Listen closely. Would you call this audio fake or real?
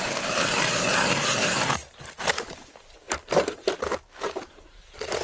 fake